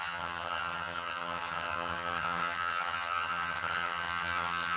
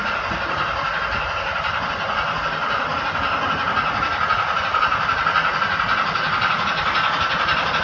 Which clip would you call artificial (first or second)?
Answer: first